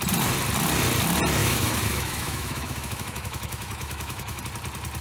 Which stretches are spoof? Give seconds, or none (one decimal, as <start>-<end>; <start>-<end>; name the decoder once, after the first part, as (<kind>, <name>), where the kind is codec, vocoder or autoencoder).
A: 1.4-4.4 (autoencoder, DAC-VAE)

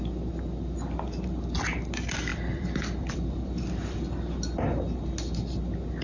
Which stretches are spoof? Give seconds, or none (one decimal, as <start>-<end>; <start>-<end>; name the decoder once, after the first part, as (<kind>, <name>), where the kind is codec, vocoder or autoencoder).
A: 2.3-4.8 (vocoder, BigVGAN v2)

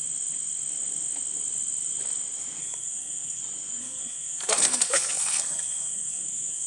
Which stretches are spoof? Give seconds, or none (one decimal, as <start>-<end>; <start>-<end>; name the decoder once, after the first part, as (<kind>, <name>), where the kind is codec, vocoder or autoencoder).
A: 2.6-3.4 (codec, SNAC); 3.8-6.7

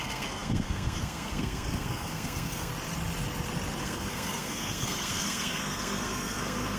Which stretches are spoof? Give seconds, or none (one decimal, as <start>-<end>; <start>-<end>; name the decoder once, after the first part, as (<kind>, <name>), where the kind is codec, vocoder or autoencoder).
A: 0.0-2.7 (codec, SNAC); 3.8-6.8

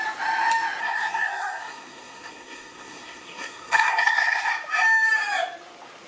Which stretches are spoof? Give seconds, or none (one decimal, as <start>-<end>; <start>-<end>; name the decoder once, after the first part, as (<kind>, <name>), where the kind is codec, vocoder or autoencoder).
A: 0.8-4.5 (codec, SNAC)

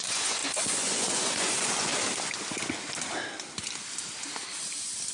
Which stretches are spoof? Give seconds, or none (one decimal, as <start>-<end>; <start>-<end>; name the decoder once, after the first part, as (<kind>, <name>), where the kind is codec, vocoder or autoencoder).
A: 0.0-1.9 (vocoder, Vocos)

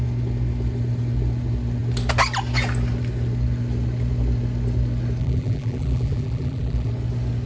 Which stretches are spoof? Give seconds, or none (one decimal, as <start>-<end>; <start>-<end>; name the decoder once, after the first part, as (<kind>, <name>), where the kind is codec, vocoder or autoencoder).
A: 5.2-6.9 (vocoder, BigVGAN v2)